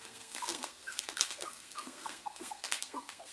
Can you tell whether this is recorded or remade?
remade